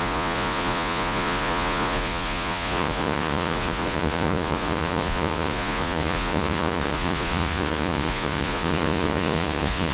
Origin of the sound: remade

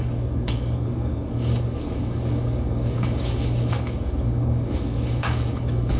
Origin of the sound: remade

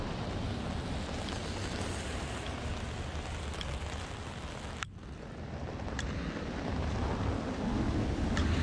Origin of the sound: recorded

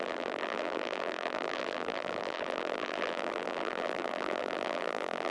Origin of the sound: remade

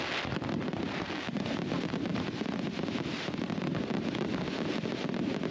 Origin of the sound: recorded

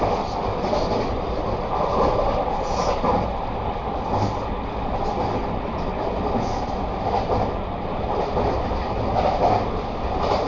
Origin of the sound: recorded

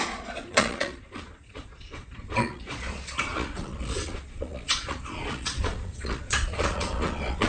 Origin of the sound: remade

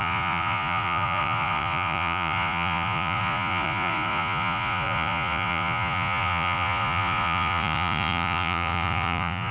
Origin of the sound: remade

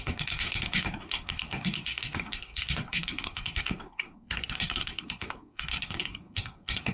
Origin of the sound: remade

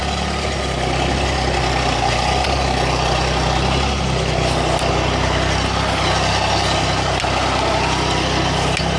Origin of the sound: recorded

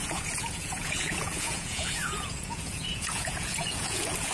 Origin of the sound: remade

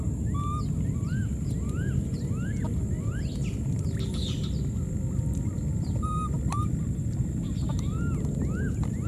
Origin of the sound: recorded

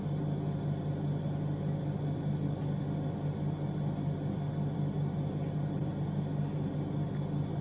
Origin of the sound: recorded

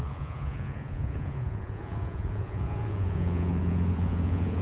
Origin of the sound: remade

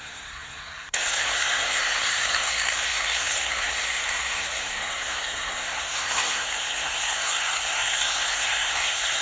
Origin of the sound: remade